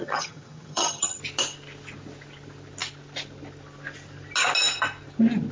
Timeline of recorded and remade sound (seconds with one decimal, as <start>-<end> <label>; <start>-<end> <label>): 0.0-1.2 remade; 1.2-5.5 recorded